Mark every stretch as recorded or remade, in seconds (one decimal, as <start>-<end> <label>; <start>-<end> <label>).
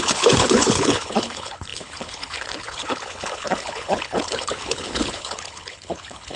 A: 0.0-6.4 remade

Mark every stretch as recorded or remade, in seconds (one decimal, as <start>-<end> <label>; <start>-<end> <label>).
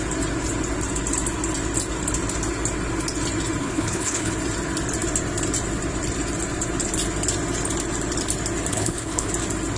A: 0.0-3.6 recorded; 3.6-4.3 remade; 4.3-8.7 recorded; 8.7-9.3 remade; 9.3-9.8 recorded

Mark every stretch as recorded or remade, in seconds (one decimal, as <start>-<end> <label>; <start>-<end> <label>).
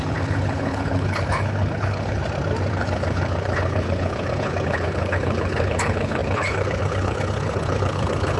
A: 0.0-2.2 remade; 2.2-2.7 recorded; 2.7-8.4 remade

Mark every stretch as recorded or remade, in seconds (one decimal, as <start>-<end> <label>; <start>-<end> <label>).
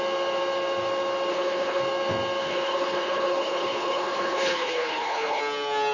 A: 0.0-1.3 recorded; 1.3-1.8 remade; 1.8-2.4 recorded; 2.4-5.4 remade; 5.4-5.9 recorded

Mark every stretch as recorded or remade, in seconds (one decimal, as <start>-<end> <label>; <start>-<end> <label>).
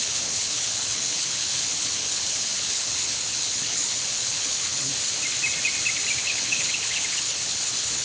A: 0.0-4.9 remade; 4.9-6.2 recorded; 6.2-8.0 remade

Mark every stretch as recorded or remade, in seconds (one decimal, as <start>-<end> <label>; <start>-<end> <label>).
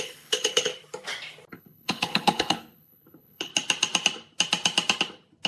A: 0.0-0.7 remade; 0.7-1.5 recorded; 1.5-3.5 remade; 3.5-5.5 recorded